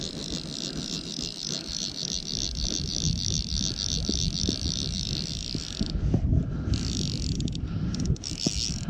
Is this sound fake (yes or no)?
no